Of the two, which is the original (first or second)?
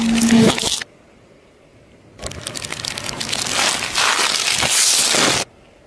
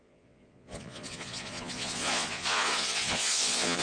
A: first